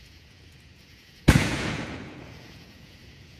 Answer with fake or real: fake